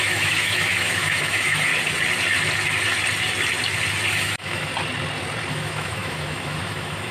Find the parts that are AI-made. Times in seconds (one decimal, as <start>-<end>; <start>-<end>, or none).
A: 0.0-1.7; 4.1-4.7; 5.5-7.1